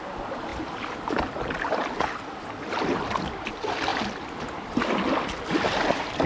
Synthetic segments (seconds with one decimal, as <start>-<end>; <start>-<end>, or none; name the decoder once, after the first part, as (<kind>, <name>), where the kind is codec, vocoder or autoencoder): none